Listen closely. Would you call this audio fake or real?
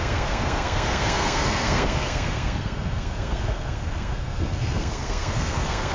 fake